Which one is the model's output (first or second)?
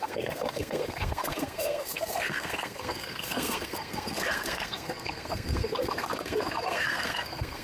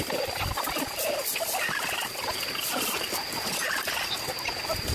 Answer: first